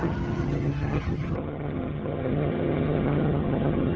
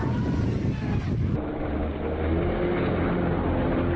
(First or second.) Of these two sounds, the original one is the second